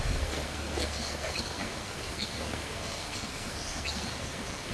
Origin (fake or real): fake